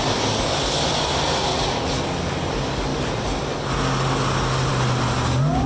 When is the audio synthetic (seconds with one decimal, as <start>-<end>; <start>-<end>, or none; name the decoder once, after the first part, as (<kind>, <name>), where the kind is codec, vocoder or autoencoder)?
1.5-2.0 (vocoder, Vocos)